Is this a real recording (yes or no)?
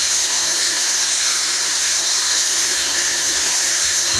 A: no